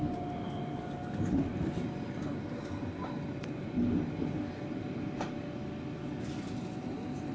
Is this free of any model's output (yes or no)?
yes